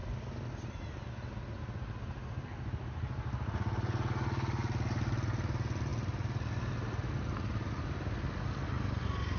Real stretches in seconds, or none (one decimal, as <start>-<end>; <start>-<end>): 0.0-9.4